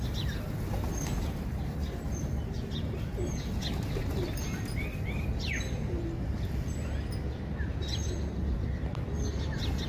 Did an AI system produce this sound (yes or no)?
no